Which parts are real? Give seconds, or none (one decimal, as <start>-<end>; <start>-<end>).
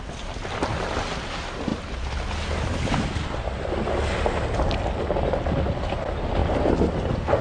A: 0.0-7.4